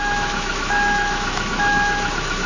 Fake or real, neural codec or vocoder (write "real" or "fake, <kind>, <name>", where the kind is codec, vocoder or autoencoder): fake, autoencoder, DAC-VAE